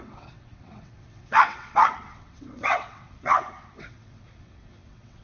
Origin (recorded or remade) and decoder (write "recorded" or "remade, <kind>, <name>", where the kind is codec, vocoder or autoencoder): remade, vocoder, WaveNeXt